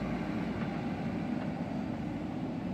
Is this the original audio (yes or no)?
yes